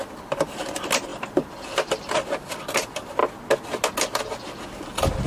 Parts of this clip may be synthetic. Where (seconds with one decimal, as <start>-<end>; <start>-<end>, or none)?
0.0-3.2; 4.2-5.3